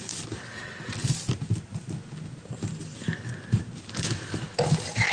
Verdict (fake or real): real